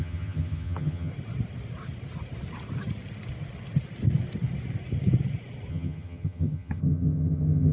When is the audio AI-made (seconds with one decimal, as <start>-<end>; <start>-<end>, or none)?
0.0-1.1; 5.7-7.7